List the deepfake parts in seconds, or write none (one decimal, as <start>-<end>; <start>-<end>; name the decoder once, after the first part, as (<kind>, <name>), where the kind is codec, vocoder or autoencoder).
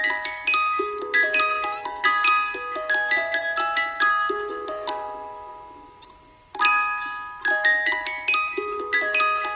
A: none